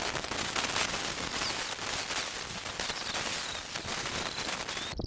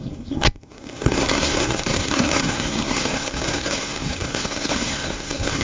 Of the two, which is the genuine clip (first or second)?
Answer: first